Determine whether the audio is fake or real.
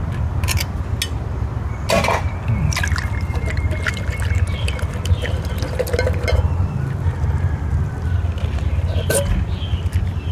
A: real